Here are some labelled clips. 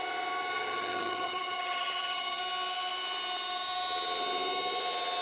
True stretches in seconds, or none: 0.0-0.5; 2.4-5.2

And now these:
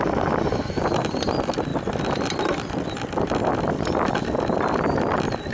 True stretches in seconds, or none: 0.0-5.5

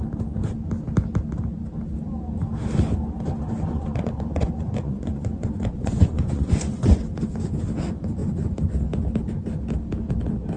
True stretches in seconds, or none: 0.0-3.7; 7.0-10.6

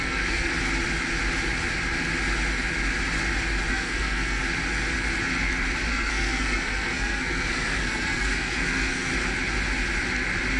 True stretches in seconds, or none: 0.5-3.7; 4.4-5.9; 9.1-10.6

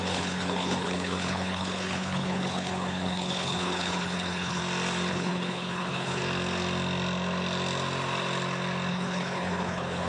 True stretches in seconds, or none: 4.6-5.1; 6.2-8.9